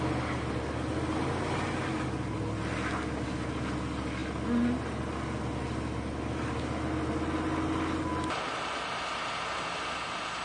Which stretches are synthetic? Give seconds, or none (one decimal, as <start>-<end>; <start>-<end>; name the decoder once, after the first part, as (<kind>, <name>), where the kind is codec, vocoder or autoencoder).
none